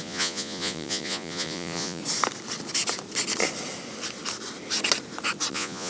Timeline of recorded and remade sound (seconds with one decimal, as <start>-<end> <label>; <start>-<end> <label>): 0.0-2.0 remade; 2.0-5.5 recorded; 5.5-5.9 remade